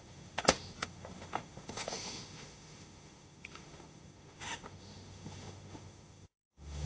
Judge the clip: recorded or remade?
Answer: remade